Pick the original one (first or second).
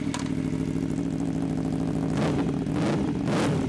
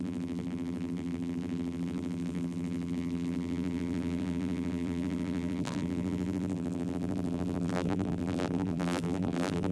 first